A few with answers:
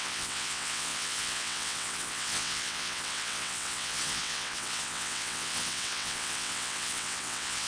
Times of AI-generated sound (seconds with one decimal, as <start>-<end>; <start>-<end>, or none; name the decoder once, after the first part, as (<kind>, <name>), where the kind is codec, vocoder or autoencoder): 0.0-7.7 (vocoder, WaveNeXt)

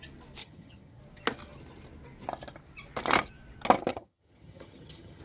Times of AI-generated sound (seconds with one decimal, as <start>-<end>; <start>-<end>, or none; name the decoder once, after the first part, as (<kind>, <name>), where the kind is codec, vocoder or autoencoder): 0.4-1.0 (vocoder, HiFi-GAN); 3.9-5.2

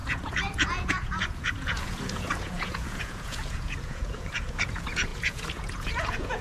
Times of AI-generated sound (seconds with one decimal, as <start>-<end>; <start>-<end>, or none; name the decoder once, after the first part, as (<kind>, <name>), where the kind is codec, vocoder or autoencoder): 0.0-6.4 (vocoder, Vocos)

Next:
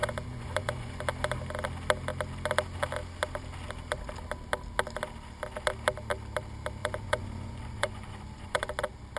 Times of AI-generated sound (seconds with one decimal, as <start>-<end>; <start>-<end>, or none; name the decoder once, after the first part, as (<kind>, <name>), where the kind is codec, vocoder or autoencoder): 0.0-1.0 (vocoder, Vocos); 6.8-8.7